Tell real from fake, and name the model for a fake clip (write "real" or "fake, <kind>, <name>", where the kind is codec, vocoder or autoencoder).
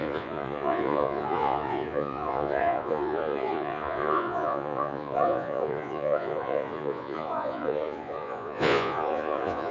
fake, vocoder, Vocos